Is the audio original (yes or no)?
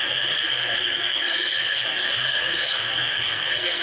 no